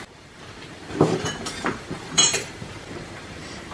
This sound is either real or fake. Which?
fake